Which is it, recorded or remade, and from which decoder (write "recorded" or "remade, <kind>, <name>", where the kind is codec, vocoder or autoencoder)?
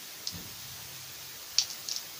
recorded